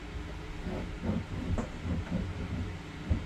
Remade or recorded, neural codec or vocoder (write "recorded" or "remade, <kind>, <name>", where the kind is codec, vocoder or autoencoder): recorded